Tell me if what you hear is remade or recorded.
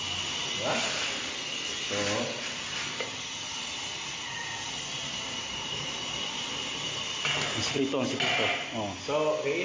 recorded